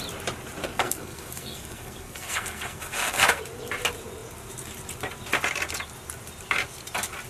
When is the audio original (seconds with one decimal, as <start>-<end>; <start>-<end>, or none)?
0.0-0.6; 3.4-7.3